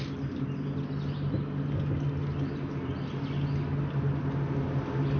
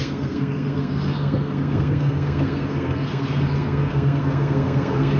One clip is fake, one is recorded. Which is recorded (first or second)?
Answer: first